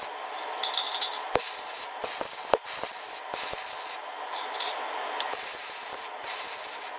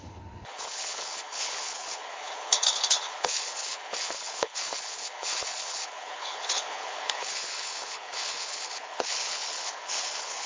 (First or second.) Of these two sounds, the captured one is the first